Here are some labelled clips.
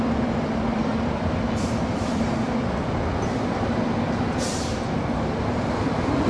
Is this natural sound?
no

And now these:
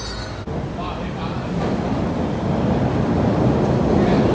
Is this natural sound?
yes